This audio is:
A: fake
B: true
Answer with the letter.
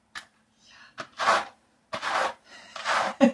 A